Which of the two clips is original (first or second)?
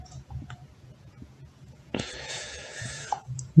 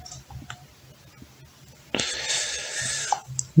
second